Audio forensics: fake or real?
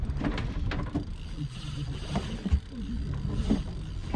real